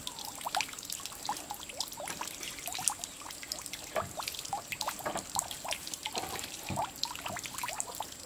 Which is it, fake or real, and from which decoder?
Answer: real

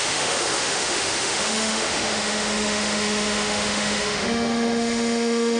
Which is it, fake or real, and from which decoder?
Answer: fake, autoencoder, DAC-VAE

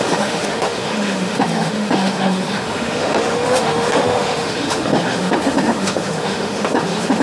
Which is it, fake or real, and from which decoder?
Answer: fake, autoencoder, DAC-VAE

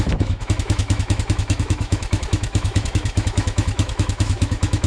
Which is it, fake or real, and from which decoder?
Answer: fake, autoencoder, DAC-VAE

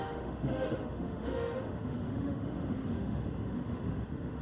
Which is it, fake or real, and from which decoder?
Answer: fake, autoencoder, DAC-VAE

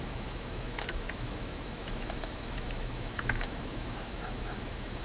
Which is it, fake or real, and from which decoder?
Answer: fake, autoencoder, DAC-VAE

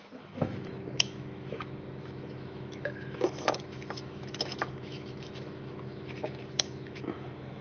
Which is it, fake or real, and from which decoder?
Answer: fake, autoencoder, DAC-VAE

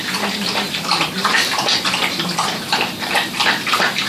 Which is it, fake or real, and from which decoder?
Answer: real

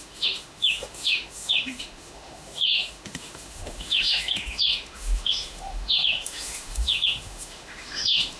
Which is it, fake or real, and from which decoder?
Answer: fake, autoencoder, DAC-VAE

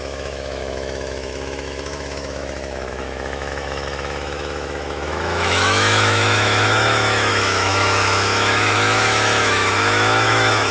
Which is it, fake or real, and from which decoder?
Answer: fake, autoencoder, DAC-VAE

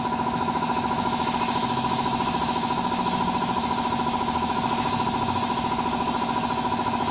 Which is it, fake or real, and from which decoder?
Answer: fake, autoencoder, DAC-VAE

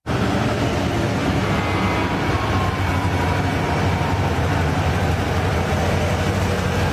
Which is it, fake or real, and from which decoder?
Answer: real